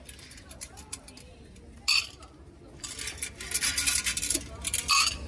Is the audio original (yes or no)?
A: yes